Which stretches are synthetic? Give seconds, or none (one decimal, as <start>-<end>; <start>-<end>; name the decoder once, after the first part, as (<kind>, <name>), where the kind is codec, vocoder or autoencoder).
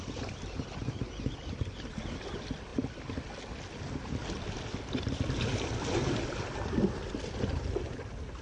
none